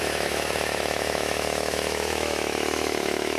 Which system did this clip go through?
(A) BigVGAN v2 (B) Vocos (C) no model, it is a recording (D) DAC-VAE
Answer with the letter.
D